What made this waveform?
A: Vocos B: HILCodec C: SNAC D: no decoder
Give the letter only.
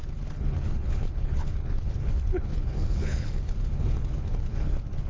B